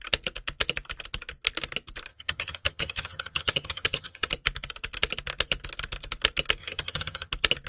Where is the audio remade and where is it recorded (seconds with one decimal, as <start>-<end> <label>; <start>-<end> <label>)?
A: 0.0-2.1 recorded; 2.1-4.3 remade; 4.3-6.6 recorded; 6.6-7.3 remade; 7.3-7.7 recorded